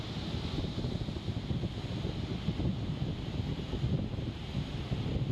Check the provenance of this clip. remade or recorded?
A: recorded